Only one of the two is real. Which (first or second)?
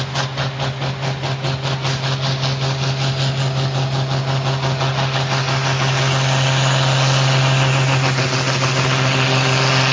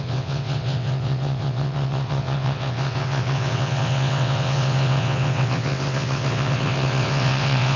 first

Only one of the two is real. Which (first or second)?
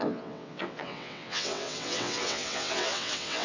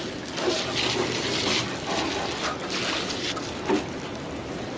second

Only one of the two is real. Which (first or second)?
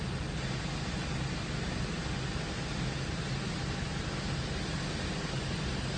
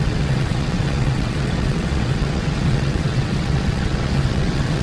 first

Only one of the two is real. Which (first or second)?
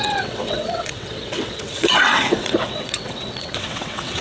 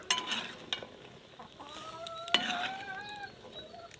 second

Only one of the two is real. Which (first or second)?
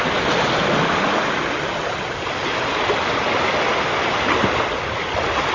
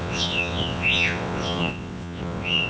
first